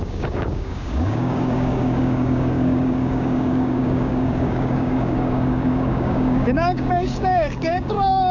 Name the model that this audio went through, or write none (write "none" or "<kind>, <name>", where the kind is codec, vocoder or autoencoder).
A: codec, DAC